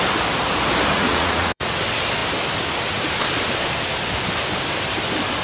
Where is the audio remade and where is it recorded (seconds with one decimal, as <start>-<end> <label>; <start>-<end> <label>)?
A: 0.0-0.9 recorded; 0.9-1.8 remade; 1.8-5.4 recorded